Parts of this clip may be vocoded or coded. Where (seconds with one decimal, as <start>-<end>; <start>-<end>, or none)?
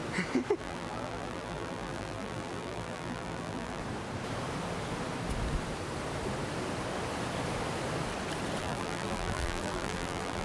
0.6-3.8; 8.6-10.4